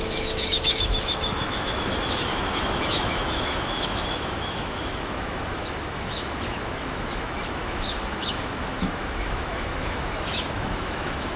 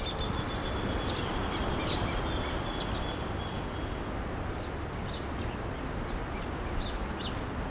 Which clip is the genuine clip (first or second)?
second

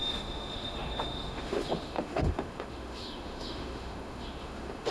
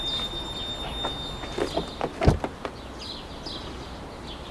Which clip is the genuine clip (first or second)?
second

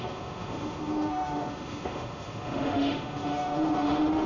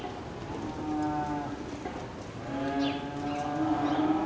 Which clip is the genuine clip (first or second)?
second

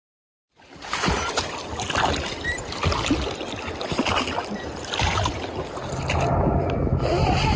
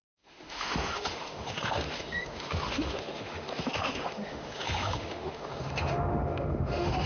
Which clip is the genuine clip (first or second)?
first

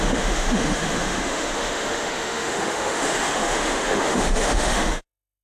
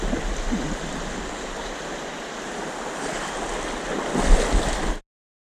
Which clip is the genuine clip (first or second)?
second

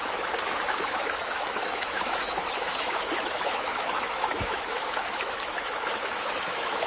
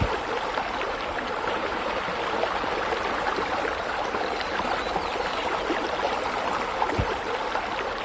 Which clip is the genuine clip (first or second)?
second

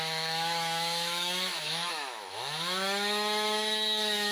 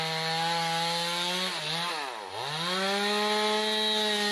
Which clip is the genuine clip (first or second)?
second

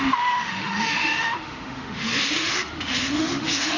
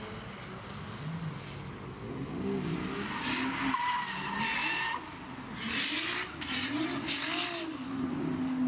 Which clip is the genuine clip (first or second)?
second